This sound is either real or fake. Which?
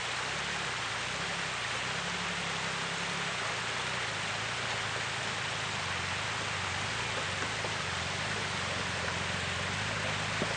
real